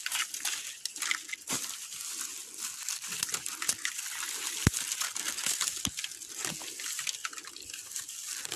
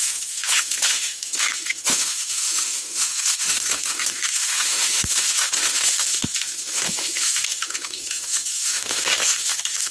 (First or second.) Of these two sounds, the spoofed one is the second